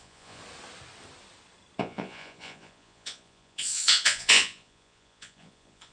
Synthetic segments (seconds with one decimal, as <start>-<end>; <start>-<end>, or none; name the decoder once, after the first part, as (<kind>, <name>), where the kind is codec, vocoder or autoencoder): 0.0-0.4 (vocoder, Vocos); 1.8-5.9